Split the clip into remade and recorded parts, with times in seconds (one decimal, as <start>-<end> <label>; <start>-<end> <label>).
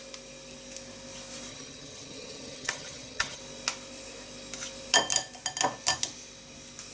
0.0-1.5 recorded; 1.5-3.4 remade; 3.4-6.9 recorded